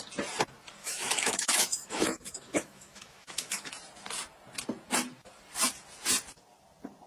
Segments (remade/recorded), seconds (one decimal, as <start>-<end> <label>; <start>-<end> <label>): 0.0-0.8 recorded; 0.8-3.7 remade; 3.7-7.1 recorded